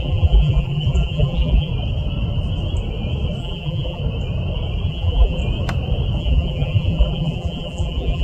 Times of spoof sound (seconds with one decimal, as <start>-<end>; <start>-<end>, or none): 0.0-1.7; 3.4-4.0; 4.9-5.4; 6.2-8.2